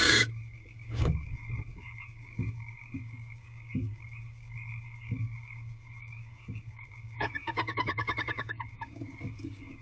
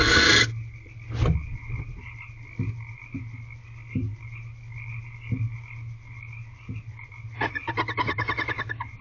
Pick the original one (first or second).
second